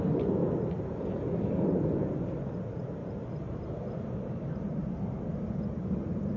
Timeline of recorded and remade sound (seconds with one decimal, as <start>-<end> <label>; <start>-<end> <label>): 0.0-0.4 recorded; 0.4-1.8 remade; 1.8-3.0 recorded; 3.0-5.2 remade; 5.2-6.4 recorded